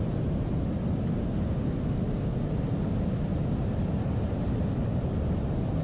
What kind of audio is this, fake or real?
real